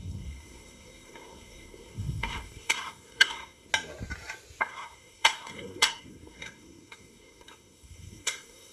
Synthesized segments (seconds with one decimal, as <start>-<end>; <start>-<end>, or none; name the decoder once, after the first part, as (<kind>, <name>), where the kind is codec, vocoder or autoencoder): 0.0-3.7 (codec, SNAC); 4.6-8.7